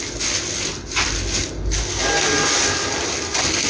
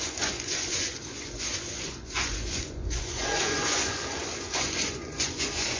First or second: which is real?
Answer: first